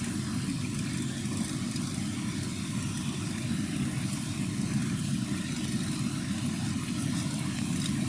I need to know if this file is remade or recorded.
recorded